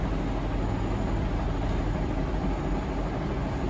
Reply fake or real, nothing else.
real